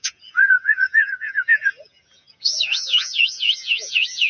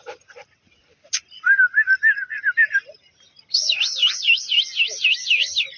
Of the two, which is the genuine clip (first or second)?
second